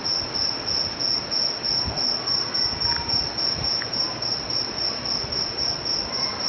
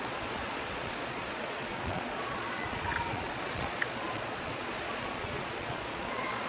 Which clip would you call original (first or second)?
first